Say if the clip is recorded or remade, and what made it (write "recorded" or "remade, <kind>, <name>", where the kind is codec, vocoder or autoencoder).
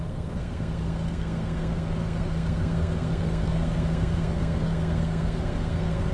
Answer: remade, codec, SNAC